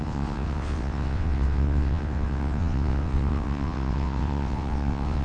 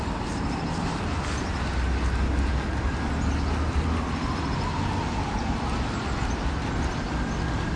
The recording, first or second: second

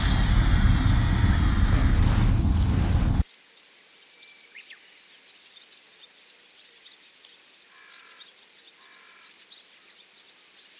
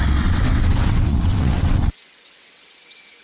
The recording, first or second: first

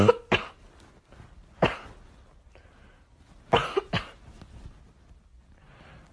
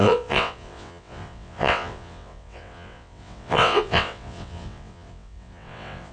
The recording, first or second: first